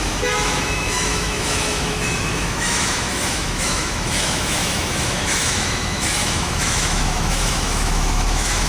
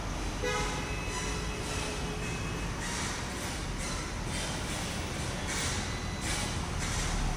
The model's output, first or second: first